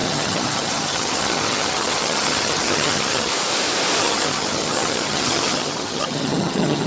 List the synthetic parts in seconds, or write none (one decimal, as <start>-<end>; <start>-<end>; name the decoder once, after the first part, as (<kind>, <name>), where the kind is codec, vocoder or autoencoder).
0.0-3.3 (vocoder, HiFi-GAN); 4.0-6.9